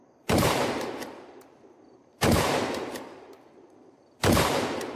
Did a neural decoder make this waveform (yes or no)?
yes